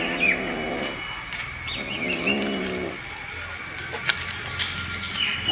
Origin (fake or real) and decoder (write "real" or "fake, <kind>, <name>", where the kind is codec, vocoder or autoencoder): real